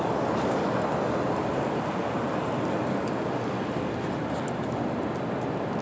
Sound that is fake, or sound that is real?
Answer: real